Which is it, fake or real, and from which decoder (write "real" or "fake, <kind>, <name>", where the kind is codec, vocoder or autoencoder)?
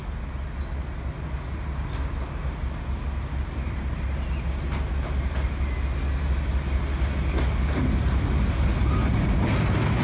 real